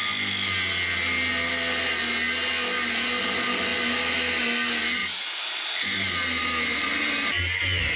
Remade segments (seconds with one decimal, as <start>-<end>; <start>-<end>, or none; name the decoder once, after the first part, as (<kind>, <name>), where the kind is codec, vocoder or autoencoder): 5.0-7.4 (vocoder, BigVGAN v2)